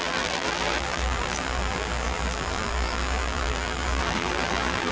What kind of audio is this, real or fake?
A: fake